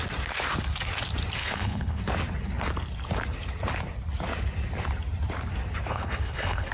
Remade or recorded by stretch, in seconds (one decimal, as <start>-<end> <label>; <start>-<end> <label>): 0.0-1.4 recorded; 1.4-2.0 remade; 2.0-5.9 recorded; 5.9-6.7 remade